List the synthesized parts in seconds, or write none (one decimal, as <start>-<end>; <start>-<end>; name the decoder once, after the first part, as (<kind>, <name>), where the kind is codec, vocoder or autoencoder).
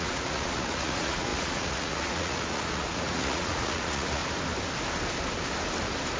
0.0-4.2 (vocoder, Vocos)